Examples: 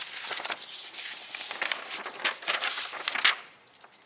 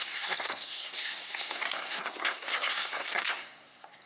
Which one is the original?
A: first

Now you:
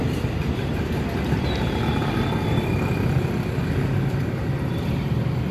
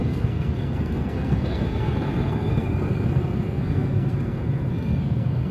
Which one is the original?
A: first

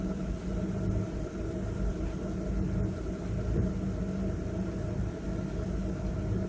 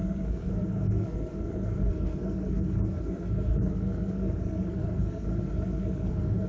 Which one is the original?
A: first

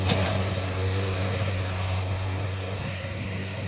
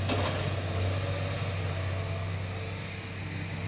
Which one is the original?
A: second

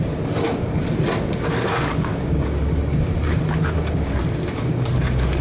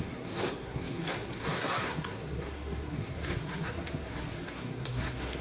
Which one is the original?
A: first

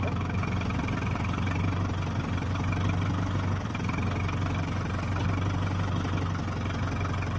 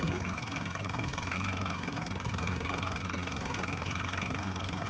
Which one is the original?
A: first